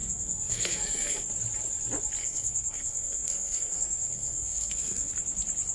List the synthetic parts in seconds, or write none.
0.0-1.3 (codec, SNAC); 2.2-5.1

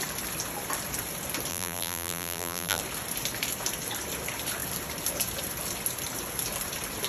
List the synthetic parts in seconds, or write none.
1.5-2.8 (vocoder, BigVGAN v2)

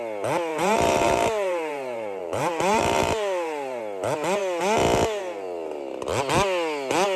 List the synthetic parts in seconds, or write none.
0.5-3.8 (vocoder, BigVGAN v2)

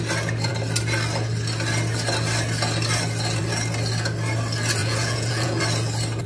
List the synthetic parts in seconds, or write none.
4.8-5.6 (vocoder, Vocos)

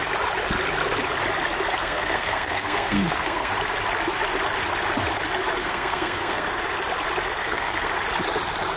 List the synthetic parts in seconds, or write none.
1.8-3.5 (codec, SNAC); 5.6-6.5; 7.4-7.9

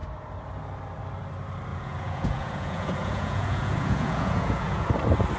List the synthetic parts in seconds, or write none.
1.7-4.9 (vocoder, Vocos)